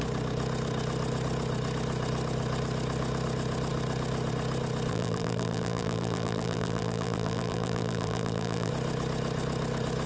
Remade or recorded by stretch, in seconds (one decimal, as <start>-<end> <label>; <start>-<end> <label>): 0.0-4.9 recorded; 4.9-8.7 remade; 8.7-10.1 recorded

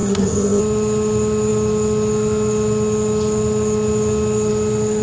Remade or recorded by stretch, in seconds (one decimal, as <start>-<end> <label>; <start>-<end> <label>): 0.0-0.6 remade; 0.6-5.0 recorded

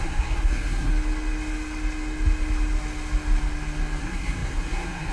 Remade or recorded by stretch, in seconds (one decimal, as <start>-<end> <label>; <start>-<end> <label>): 0.0-0.9 remade; 0.9-4.0 recorded; 4.0-5.1 remade

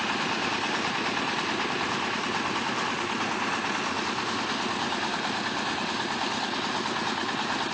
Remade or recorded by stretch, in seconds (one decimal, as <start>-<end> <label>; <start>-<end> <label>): 0.0-7.7 recorded

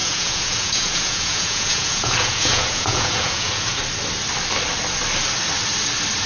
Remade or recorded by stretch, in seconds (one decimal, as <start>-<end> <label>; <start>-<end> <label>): 0.0-3.8 remade; 3.8-6.3 recorded

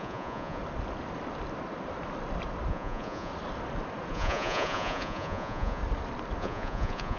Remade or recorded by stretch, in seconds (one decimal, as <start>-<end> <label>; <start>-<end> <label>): 0.0-0.6 remade; 0.6-2.7 recorded; 2.7-3.3 remade; 3.3-4.1 recorded; 4.1-5.8 remade; 5.8-6.4 recorded; 6.4-7.2 remade